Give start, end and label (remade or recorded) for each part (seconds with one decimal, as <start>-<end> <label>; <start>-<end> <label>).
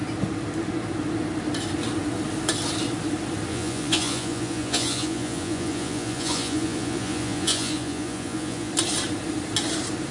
0.0-3.5 recorded; 3.5-8.7 remade; 8.7-10.1 recorded